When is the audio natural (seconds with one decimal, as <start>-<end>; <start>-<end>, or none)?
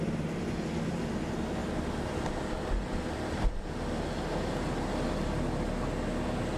0.0-6.6